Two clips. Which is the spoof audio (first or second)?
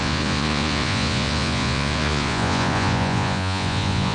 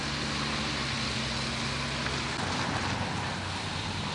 first